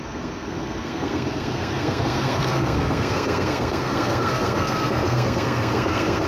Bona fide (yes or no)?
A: no